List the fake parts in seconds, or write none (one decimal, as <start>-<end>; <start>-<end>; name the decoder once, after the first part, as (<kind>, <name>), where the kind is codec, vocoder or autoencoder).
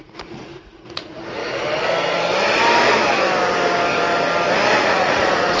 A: 0.0-1.4 (vocoder, Vocos); 4.8-5.6